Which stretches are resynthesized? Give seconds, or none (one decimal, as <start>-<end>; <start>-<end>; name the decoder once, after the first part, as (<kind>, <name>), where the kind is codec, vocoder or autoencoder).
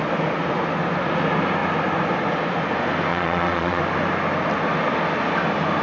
3.1-3.8 (vocoder, Vocos)